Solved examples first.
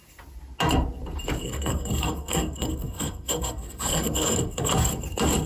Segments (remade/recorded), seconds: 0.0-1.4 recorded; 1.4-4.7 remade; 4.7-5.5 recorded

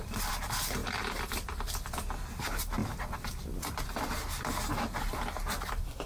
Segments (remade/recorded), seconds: 0.0-0.8 recorded; 0.8-2.3 remade; 2.3-6.1 recorded

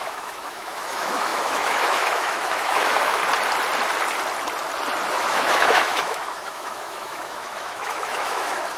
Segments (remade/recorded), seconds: 0.0-3.2 remade; 3.2-5.1 recorded; 5.1-8.8 remade

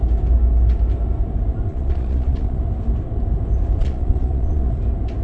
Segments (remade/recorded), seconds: 0.0-1.7 recorded; 1.7-2.6 remade; 2.6-3.8 recorded; 3.8-4.8 remade; 4.8-5.2 recorded

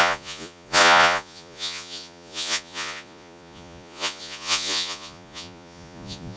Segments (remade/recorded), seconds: 0.0-6.4 remade

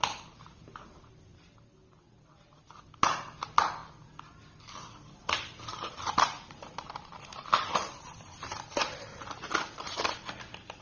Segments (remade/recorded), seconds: 0.0-10.8 recorded

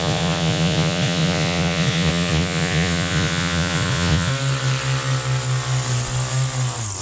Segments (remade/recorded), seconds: 0.0-4.3 remade; 4.3-7.0 recorded